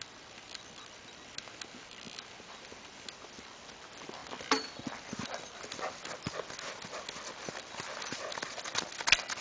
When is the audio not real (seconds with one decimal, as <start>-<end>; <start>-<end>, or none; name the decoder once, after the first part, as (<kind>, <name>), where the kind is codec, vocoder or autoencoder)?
none